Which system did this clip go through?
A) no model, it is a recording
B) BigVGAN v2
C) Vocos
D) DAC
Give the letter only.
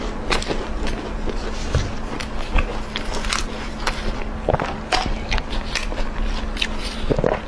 A